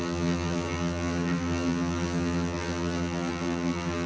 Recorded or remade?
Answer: remade